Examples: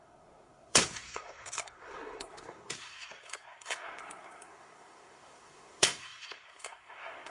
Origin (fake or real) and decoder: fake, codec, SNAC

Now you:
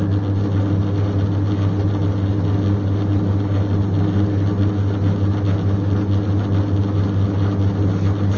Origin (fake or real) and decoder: real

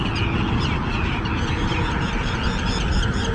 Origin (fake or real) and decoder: real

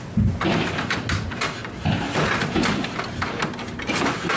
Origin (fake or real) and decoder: real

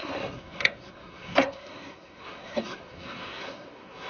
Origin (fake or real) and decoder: fake, codec, SNAC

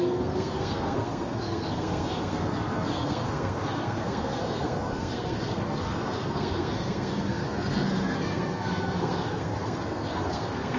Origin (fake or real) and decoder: fake, codec, SNAC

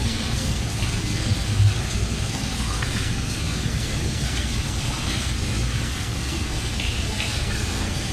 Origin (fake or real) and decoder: fake, codec, SNAC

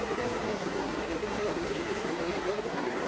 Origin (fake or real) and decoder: fake, codec, SNAC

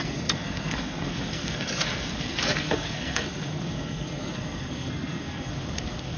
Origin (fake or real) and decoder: fake, codec, SNAC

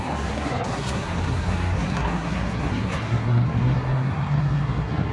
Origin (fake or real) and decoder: fake, codec, SNAC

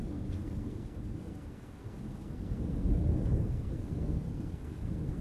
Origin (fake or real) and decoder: fake, codec, SNAC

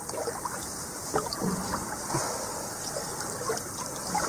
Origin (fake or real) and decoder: real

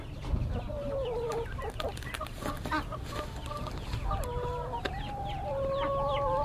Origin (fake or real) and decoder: real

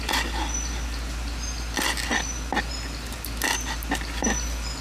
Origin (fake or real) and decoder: real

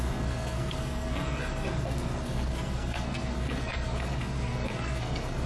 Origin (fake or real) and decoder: fake, codec, SNAC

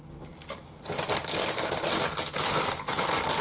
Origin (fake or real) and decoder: real